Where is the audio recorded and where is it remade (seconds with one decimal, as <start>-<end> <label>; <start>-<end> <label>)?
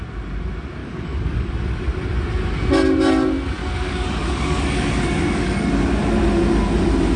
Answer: 0.0-0.8 recorded; 0.8-1.5 remade; 1.5-3.6 recorded; 3.6-5.7 remade; 5.7-7.2 recorded